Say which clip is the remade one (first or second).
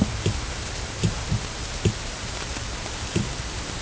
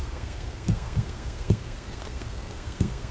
second